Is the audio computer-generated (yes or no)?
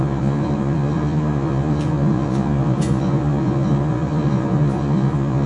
yes